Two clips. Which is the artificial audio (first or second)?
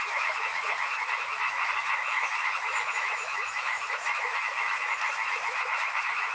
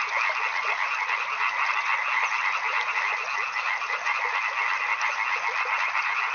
first